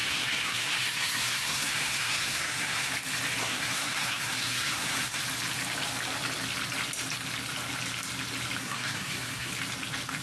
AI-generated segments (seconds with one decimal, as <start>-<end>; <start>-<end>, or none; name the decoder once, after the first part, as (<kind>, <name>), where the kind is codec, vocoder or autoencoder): 0.0-2.9 (codec, SNAC); 3.4-5.2; 8.6-9.5